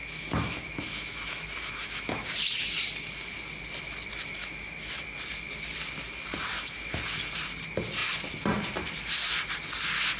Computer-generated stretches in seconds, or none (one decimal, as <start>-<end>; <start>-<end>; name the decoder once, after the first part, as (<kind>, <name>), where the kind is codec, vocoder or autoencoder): 0.0-2.3 (autoencoder, DAC-VAE); 4.4-5.0; 6.5-7.0